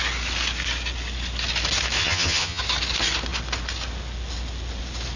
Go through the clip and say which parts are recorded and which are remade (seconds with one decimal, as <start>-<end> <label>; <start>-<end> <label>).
0.0-2.0 recorded; 2.0-2.6 remade; 2.6-5.2 recorded